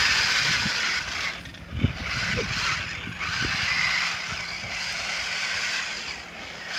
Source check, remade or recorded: recorded